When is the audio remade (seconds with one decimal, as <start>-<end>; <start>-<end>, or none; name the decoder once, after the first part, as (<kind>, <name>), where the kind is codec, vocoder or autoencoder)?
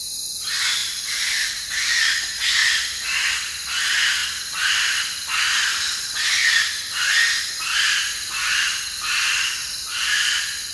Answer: 0.8-1.7 (vocoder, BigVGAN v2)